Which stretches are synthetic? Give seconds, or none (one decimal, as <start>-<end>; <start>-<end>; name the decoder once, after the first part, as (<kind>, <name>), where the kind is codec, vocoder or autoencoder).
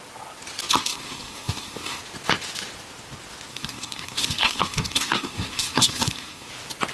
0.7-2.0 (codec, SNAC); 3.5-6.5